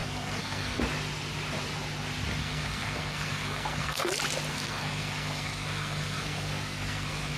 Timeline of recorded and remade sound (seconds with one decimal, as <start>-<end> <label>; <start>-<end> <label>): 0.0-0.8 remade; 0.8-2.4 recorded; 2.4-4.1 remade; 4.1-4.5 recorded; 4.5-7.4 remade